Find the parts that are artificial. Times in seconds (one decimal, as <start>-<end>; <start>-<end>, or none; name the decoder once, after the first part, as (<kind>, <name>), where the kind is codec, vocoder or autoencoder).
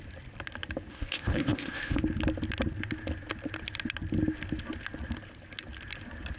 0.9-2.0 (codec, ZipCodec)